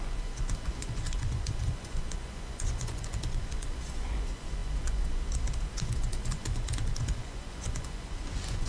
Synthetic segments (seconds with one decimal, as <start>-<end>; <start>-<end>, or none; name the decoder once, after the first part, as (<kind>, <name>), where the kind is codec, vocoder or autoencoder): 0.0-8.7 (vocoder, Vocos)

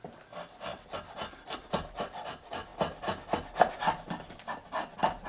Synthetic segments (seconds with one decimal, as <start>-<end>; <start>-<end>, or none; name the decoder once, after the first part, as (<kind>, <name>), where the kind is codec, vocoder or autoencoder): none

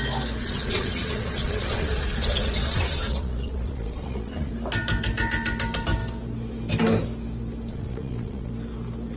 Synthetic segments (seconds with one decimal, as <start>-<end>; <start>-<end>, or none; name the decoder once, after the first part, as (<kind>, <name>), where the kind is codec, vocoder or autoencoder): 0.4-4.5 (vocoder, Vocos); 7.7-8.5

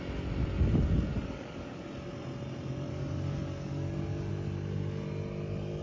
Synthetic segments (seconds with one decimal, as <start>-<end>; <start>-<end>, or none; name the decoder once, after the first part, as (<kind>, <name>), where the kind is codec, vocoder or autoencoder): 1.1-1.8 (codec, DAC); 2.9-4.3

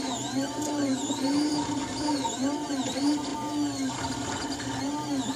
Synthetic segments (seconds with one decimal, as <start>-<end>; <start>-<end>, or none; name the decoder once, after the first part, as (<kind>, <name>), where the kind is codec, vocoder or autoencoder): 0.0-2.4 (vocoder, BigVGAN v2); 2.9-3.3; 4.8-5.4

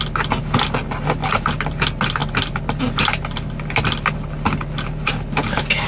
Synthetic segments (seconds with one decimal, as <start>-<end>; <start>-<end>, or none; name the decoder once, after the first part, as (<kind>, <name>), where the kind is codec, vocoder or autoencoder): none

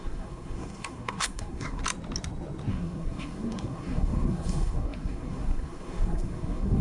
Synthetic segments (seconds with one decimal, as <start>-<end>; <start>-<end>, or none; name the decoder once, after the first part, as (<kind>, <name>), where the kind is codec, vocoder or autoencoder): 0.0-1.8 (codec, SNAC); 2.7-6.8

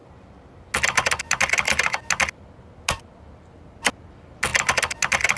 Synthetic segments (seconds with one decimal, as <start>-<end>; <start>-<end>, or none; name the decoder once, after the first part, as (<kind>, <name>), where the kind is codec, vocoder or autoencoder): none